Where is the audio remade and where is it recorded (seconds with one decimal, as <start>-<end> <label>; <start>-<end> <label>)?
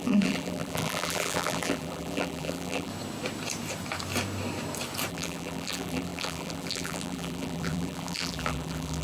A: 0.0-2.9 remade; 2.9-5.1 recorded; 5.1-9.0 remade